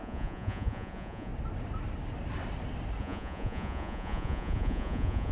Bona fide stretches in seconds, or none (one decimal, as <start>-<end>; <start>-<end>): 1.3-3.0

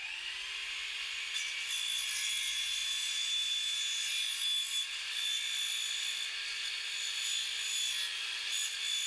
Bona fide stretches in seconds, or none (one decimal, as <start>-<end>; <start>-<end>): 0.0-9.1